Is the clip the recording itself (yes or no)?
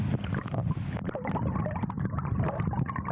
yes